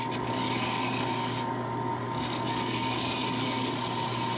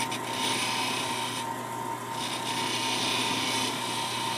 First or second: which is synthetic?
first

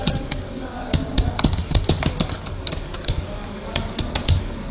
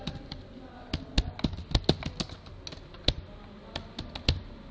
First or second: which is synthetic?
first